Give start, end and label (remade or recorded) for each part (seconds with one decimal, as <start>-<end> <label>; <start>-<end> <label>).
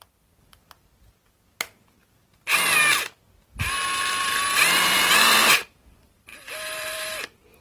0.0-0.6 remade; 0.6-3.9 recorded; 3.9-7.6 remade